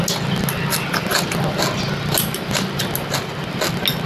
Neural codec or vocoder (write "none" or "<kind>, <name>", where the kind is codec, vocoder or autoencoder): none